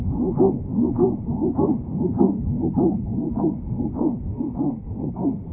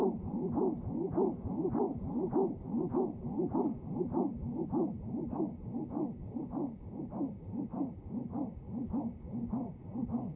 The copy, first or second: first